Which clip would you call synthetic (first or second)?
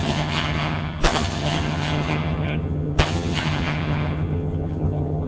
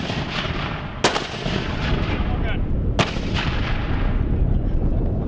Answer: first